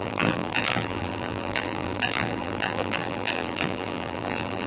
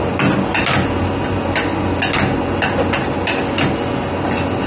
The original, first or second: second